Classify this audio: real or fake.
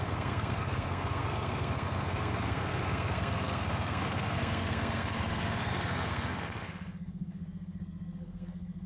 fake